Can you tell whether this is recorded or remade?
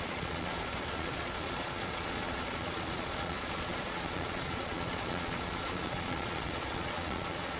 remade